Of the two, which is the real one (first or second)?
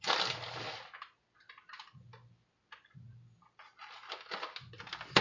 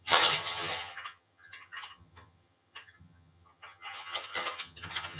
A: first